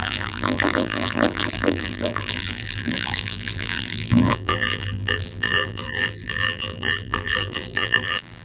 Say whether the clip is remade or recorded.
remade